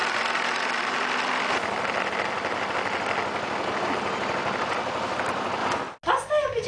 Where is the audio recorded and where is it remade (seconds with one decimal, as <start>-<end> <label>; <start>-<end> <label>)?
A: 0.0-6.7 recorded